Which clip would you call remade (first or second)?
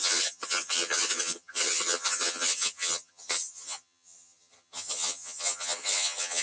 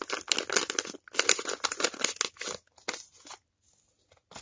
first